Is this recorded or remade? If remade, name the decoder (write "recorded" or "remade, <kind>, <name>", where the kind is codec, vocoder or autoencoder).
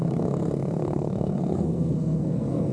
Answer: remade, codec, SNAC